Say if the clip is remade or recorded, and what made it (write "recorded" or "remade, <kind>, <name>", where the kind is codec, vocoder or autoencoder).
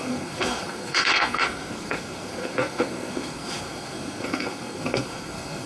remade, codec, SNAC